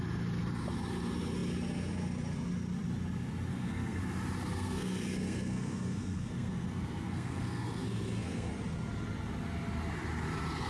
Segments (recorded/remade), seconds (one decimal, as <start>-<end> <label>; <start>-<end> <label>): 0.0-3.5 recorded; 3.5-4.0 remade; 4.0-4.5 recorded; 4.5-8.5 remade; 8.5-10.7 recorded